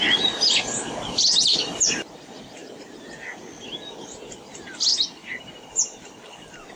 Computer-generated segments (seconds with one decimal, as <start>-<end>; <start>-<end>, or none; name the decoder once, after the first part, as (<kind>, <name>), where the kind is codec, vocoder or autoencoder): none